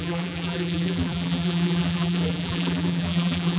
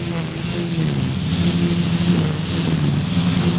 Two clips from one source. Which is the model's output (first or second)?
first